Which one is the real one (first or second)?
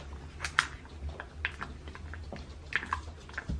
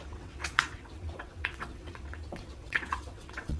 first